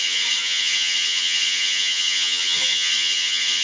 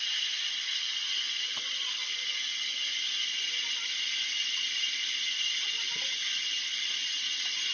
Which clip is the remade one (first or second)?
first